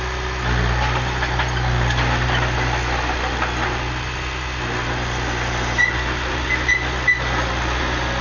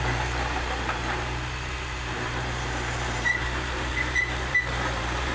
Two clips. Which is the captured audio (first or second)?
first